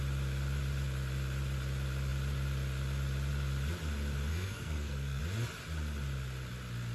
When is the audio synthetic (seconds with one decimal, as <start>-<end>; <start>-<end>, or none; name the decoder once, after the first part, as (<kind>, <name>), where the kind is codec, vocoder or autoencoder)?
4.3-5.2 (codec, SNAC)